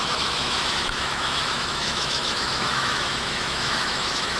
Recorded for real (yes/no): no